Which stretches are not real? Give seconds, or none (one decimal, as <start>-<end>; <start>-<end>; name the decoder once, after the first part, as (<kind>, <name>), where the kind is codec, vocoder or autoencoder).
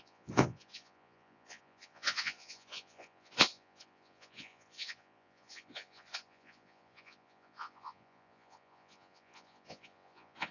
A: 0.0-10.5 (vocoder, Vocos)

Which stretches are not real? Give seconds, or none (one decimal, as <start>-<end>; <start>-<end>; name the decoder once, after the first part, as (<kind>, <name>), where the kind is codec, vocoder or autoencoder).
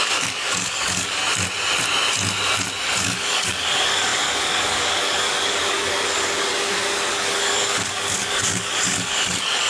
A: 0.0-1.2 (codec, DAC); 3.0-9.7